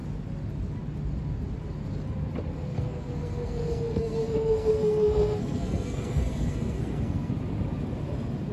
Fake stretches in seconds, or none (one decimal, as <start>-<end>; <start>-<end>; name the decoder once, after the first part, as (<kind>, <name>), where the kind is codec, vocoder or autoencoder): 2.7-7.3 (codec, SNAC)